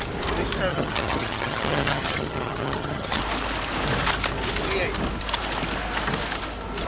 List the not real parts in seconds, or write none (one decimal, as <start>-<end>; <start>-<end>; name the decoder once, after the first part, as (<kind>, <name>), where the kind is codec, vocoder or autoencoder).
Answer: 0.7-3.2 (vocoder, HiFi-GAN)